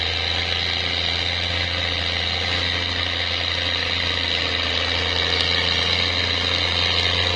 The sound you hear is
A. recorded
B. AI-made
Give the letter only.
A